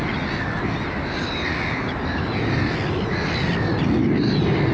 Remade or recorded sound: recorded